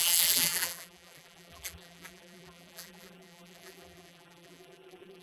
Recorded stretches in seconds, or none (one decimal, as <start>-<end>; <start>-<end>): none